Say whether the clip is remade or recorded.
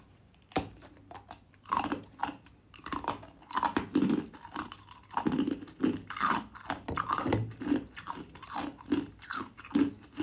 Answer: recorded